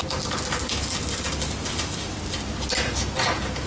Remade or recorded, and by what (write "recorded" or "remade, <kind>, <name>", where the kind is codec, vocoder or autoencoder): recorded